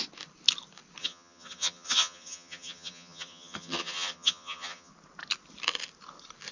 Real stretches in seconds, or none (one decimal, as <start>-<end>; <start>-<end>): 0.0-1.0; 4.9-6.5